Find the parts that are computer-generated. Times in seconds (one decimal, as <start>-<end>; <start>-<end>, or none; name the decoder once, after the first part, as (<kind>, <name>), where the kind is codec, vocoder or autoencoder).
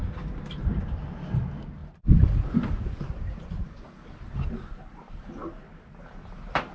none